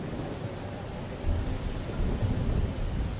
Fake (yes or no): no